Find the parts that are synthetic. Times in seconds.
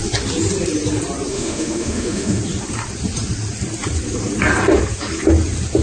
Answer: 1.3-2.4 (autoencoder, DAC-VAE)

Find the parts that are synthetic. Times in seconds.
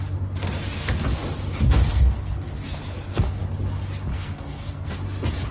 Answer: 1.9-3.4 (codec, SNAC); 4.1-4.9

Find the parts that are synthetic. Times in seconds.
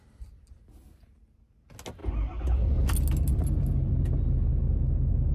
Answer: none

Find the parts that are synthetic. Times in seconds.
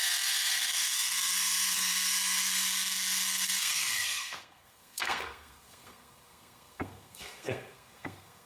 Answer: 0.0-8.5 (codec, SNAC)